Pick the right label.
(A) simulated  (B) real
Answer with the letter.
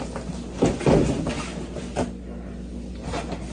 B